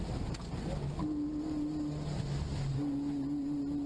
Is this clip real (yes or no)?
yes